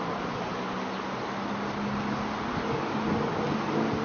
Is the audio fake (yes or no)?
no